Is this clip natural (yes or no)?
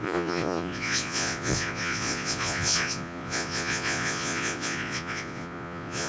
no